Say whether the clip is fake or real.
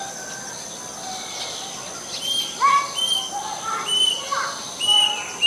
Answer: real